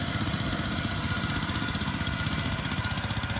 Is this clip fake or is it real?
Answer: real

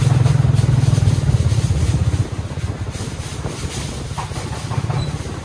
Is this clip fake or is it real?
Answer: real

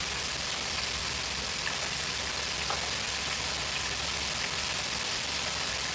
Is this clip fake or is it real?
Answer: real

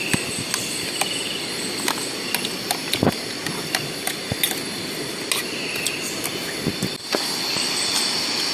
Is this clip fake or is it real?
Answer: real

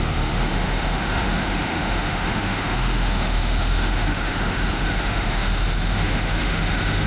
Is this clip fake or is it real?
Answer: fake